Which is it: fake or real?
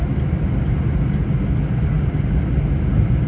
real